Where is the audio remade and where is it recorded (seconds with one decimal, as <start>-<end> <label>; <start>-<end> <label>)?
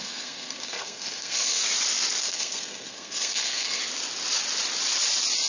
0.0-1.6 remade; 1.6-2.2 recorded; 2.2-3.8 remade; 3.8-5.5 recorded